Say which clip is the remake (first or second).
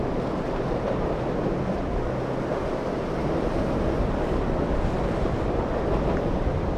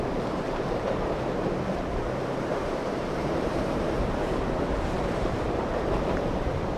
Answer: second